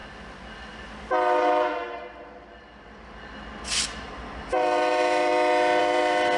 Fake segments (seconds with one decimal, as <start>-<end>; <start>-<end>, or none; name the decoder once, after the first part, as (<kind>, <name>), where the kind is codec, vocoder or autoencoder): 3.7-5.3 (vocoder, BigVGAN v2); 5.8-6.4